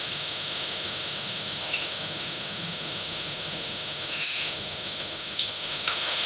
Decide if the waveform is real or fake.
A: fake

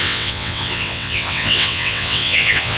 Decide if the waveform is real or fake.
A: fake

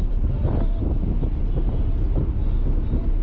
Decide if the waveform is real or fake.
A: real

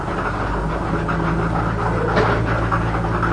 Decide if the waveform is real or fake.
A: real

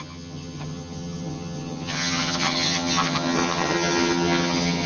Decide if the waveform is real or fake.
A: fake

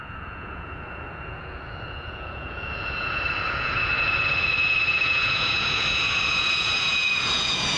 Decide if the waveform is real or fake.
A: fake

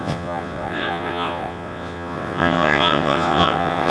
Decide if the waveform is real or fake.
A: fake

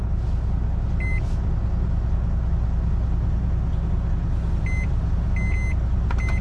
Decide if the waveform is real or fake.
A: real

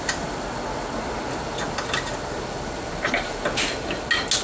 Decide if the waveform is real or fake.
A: real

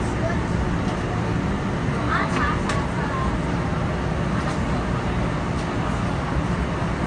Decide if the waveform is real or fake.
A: real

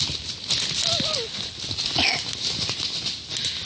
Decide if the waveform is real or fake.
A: real